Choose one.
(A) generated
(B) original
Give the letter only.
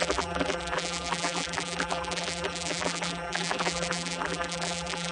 A